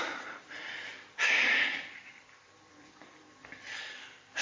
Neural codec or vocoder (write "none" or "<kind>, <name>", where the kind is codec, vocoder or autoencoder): vocoder, BigVGAN v2